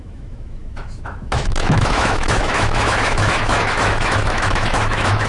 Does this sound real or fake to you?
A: fake